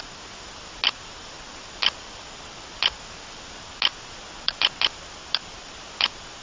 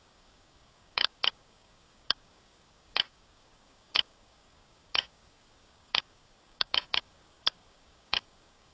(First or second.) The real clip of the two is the first